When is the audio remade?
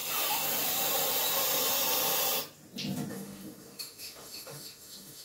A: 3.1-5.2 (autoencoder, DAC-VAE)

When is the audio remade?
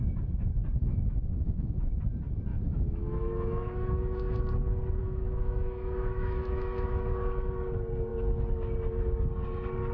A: 0.8-1.9 (autoencoder, DAC-VAE); 2.5-4.4; 5.0-6.9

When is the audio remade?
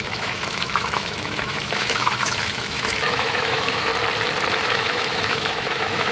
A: 0.0-3.9 (autoencoder, DAC-VAE); 4.5-6.1